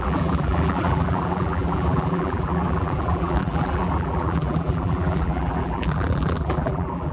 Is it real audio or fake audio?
fake